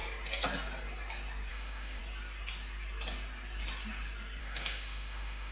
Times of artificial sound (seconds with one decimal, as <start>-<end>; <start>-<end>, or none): 1.5-2.0; 4.4-5.5